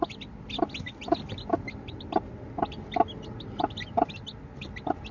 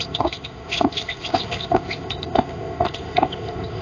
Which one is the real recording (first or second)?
first